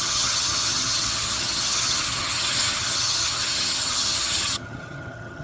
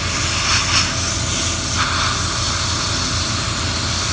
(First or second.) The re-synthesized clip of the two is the first